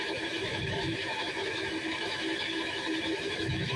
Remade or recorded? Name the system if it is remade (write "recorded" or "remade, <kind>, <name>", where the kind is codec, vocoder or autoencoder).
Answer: remade, autoencoder, DAC-VAE